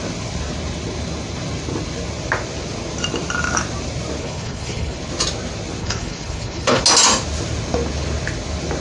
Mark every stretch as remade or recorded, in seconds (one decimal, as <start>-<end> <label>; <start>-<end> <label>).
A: 0.0-4.2 recorded; 4.2-5.0 remade; 5.0-5.8 recorded; 5.8-6.8 remade; 6.8-8.8 recorded